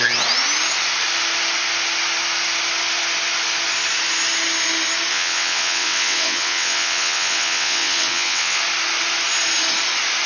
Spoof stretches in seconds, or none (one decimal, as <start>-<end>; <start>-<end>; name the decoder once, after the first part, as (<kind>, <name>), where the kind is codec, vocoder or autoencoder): 5.1-8.6 (vocoder, WaveNeXt)